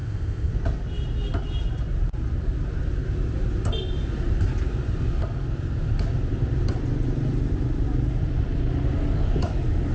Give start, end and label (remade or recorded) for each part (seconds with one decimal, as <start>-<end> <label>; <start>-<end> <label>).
0.0-0.5 remade; 0.5-9.9 recorded